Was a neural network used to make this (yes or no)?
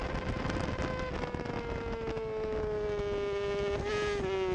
no